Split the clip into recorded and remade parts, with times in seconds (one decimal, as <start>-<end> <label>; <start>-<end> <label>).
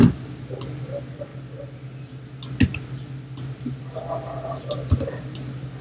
0.0-5.8 recorded